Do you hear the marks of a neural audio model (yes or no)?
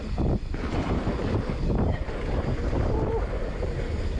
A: no